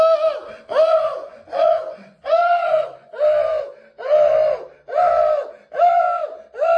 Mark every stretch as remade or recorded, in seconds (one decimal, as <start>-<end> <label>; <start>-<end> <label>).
0.0-1.2 recorded; 1.2-3.1 remade; 3.1-6.8 recorded